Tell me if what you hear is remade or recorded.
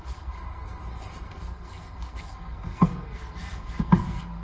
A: remade